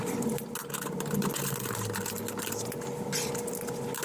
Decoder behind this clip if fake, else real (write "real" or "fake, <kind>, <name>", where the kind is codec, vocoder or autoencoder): real